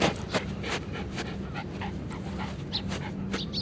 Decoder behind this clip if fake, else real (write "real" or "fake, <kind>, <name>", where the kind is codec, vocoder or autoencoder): real